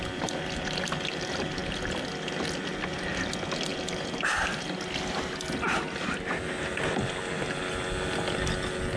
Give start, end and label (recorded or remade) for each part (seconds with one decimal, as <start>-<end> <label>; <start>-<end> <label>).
0.0-9.0 recorded